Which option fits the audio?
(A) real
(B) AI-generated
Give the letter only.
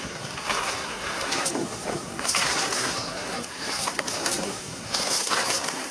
B